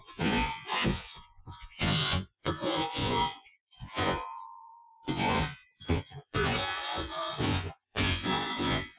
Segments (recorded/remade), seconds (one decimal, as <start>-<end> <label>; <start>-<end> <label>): 0.0-9.0 remade